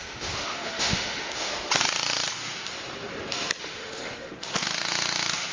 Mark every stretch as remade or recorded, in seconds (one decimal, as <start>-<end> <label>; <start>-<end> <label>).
0.0-1.5 remade; 1.5-3.6 recorded; 3.6-4.3 remade; 4.3-5.5 recorded